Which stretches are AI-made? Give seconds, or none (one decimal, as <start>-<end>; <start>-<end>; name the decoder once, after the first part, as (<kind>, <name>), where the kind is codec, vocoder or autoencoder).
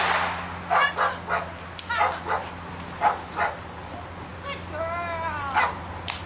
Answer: none